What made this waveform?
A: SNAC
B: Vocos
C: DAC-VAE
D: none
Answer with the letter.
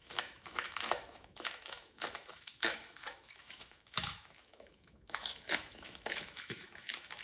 C